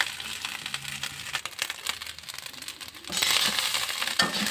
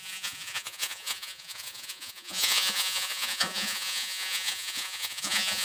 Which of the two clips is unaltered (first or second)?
first